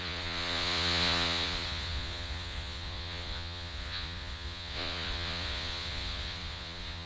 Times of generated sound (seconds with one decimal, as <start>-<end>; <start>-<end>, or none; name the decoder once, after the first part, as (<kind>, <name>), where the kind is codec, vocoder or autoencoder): 0.0-7.1 (vocoder, Vocos)